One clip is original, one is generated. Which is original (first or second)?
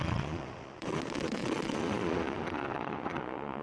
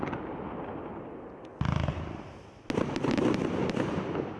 second